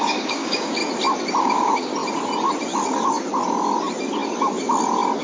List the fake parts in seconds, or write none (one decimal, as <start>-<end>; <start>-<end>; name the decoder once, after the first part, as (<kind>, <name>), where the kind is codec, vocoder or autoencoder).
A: 0.0-0.8 (codec, DAC); 1.4-1.9